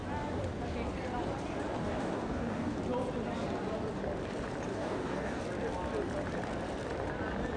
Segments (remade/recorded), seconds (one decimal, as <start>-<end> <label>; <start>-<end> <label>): 0.0-1.8 recorded; 1.8-2.8 remade; 2.8-4.7 recorded; 4.7-5.4 remade; 5.4-7.6 recorded